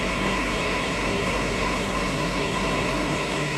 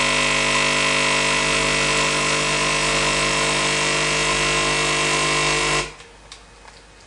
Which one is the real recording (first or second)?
second